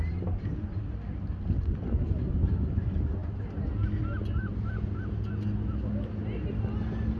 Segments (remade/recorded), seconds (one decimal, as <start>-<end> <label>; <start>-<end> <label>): 0.0-7.2 recorded